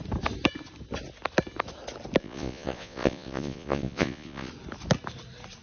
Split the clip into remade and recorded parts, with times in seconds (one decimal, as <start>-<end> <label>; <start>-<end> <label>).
0.0-2.2 recorded; 2.2-4.5 remade; 4.5-5.6 recorded